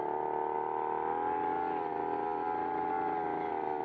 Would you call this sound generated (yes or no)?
no